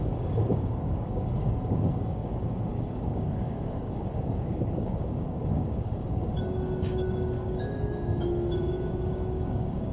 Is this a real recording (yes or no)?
no